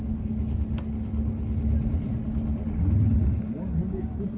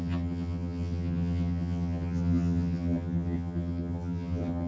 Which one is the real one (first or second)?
first